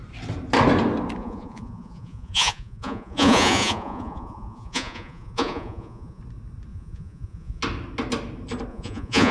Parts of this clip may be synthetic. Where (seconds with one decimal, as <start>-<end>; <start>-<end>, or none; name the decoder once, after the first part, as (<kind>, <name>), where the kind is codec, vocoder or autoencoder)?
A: 1.2-6.2 (vocoder, Vocos); 6.7-7.6; 8.7-9.3